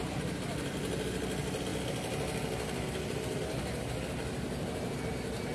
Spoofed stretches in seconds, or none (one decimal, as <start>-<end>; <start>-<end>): none